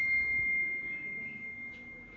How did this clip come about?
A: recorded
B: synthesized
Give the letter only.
A